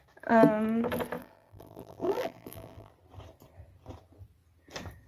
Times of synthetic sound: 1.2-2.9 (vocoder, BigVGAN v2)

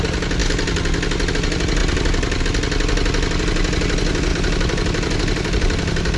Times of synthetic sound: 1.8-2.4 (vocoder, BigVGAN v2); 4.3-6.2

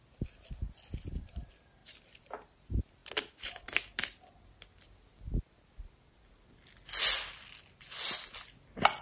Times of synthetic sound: none

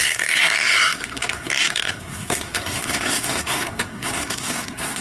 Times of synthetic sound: 0.0-5.0 (codec, SNAC)